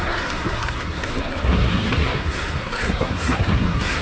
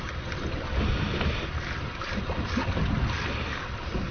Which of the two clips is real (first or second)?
second